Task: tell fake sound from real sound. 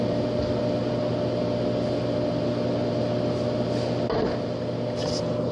real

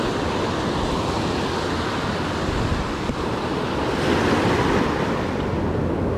real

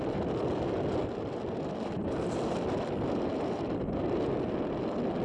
real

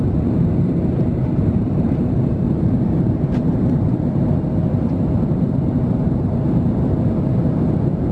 fake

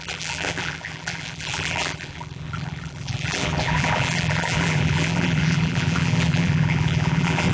fake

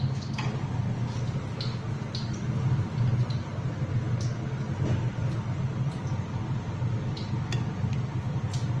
real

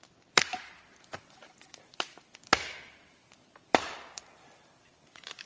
fake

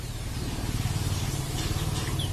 fake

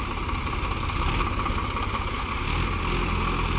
real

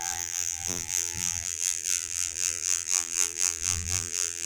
fake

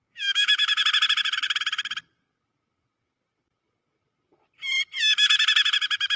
real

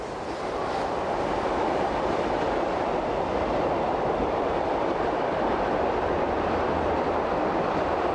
fake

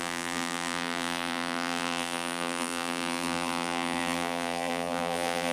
fake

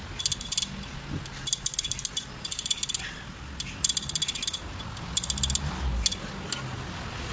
real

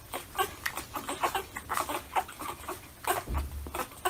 real